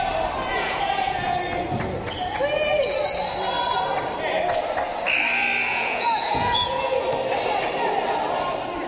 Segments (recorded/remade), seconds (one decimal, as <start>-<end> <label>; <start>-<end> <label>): 0.0-0.5 recorded; 0.5-1.4 remade; 1.4-5.7 recorded; 5.7-7.0 remade; 7.0-8.9 recorded